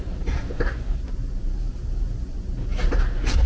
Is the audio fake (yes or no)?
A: no